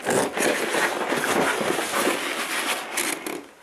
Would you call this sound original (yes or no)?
yes